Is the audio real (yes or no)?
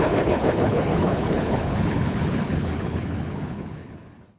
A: no